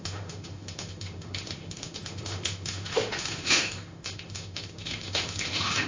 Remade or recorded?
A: remade